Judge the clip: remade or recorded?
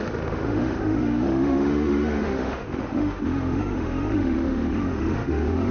remade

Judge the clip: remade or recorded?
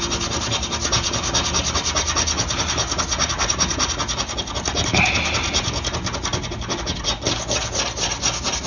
recorded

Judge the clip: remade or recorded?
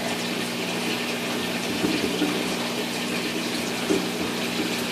recorded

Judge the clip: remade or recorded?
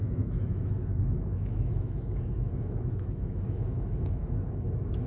remade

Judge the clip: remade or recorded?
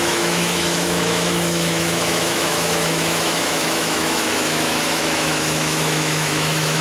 remade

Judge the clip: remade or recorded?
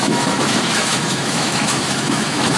remade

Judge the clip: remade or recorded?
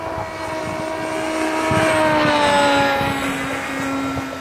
recorded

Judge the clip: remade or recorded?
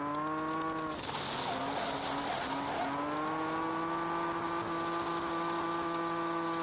recorded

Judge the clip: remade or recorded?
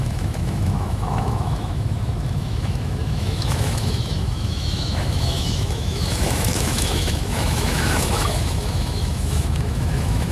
remade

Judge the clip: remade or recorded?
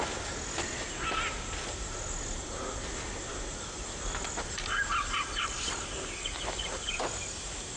recorded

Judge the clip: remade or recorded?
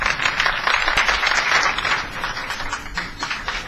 recorded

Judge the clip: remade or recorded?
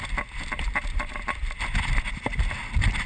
recorded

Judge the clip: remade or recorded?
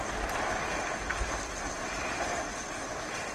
recorded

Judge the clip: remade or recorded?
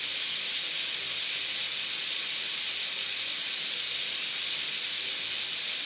recorded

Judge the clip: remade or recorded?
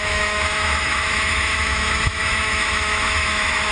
remade